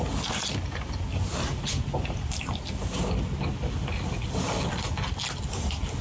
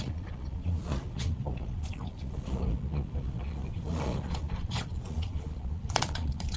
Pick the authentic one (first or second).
first